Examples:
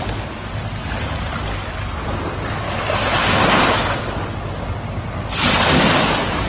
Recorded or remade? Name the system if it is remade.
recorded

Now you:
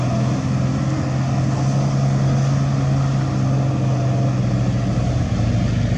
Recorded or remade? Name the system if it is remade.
recorded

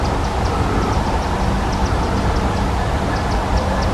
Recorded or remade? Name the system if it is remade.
recorded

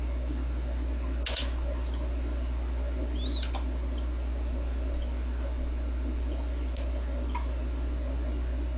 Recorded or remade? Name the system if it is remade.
recorded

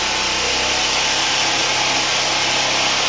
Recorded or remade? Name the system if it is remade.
recorded